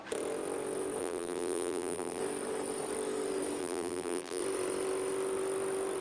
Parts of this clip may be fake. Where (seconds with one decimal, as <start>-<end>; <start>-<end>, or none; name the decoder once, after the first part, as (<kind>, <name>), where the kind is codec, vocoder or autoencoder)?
1.0-2.2 (vocoder, BigVGAN v2); 3.6-4.4